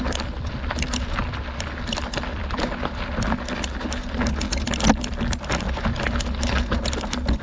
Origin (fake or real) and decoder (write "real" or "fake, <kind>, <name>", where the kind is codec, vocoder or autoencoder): real